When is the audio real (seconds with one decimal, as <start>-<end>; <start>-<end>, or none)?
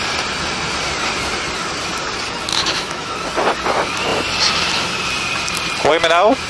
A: 0.0-2.5; 3.1-6.5